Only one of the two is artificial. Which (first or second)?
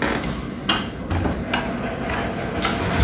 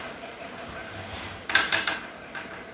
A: second